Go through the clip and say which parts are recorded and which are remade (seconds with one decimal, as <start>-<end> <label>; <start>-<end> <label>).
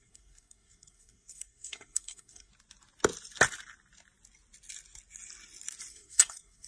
0.0-2.5 remade; 2.5-5.9 recorded; 5.9-6.7 remade